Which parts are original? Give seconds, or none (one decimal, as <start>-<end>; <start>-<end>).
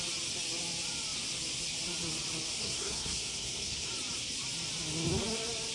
0.0-2.5; 3.9-5.7